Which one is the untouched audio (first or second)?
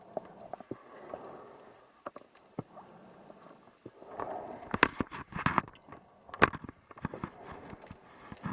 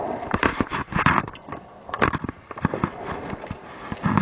first